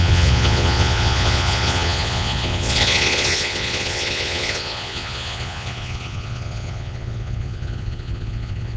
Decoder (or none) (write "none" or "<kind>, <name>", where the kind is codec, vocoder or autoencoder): vocoder, Vocos